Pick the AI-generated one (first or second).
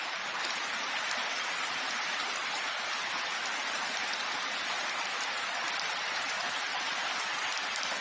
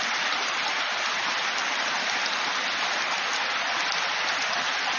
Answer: first